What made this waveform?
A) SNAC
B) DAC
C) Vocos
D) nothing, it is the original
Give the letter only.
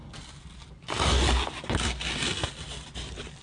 D